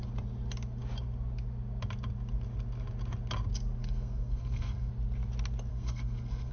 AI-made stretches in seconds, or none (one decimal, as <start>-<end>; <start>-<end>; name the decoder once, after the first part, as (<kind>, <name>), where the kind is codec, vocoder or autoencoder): 3.8-4.9 (codec, SNAC); 5.7-6.5